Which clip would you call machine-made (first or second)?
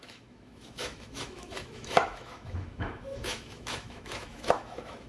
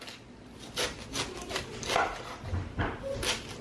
first